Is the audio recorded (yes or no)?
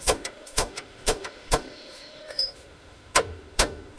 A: no